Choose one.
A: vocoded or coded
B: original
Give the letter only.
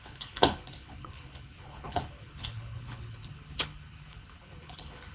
A